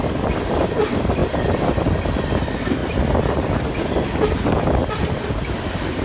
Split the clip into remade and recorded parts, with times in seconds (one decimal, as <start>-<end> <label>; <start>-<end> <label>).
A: 0.0-6.0 recorded